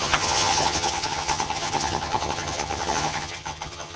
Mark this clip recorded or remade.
remade